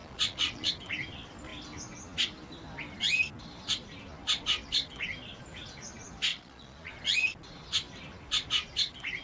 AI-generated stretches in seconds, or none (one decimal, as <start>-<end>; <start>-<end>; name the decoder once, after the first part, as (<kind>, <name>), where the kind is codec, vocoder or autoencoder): 0.0-0.7 (vocoder, Vocos); 6.3-6.9